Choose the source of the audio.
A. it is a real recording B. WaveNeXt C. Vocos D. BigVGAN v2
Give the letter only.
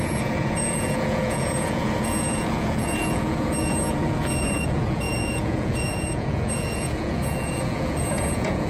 C